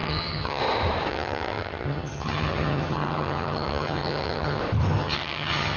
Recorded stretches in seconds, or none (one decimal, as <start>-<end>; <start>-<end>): 0.6-1.1; 4.6-5.0